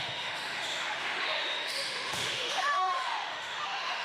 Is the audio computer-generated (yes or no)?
yes